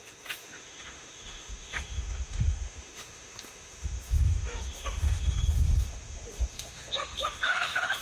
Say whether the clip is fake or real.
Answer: fake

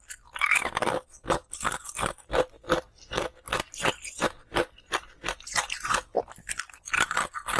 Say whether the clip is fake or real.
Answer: real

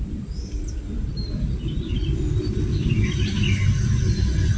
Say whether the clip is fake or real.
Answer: real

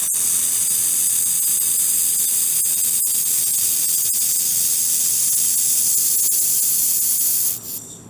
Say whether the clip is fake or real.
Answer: real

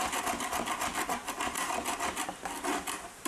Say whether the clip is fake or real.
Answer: real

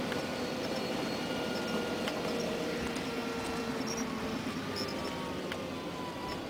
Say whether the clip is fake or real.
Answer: real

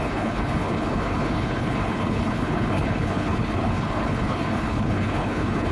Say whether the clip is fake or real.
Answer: fake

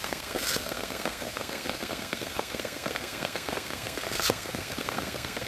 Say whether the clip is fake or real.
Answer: fake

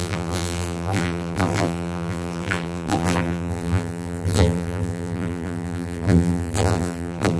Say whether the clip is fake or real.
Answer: fake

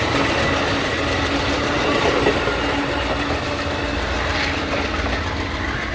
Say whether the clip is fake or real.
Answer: real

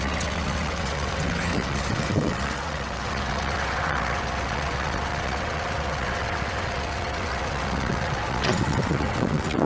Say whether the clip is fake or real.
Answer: fake